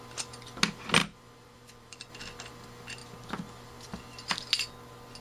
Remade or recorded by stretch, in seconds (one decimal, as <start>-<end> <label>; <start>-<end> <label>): 0.0-1.0 recorded; 1.0-2.1 remade; 2.1-5.2 recorded